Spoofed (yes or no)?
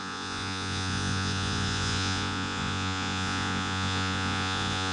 yes